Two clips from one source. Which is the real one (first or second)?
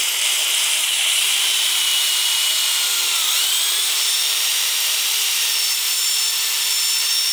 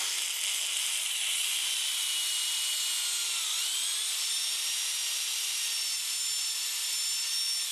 second